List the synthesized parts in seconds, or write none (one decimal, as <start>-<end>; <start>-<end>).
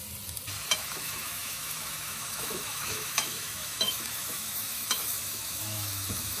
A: 0.7-6.4